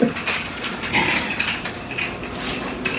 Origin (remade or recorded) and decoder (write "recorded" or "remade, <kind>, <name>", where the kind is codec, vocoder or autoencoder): recorded